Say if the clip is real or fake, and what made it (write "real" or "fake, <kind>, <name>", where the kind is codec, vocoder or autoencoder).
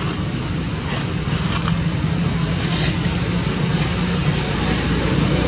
real